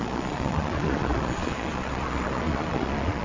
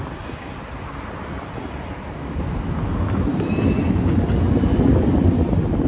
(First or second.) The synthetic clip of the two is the first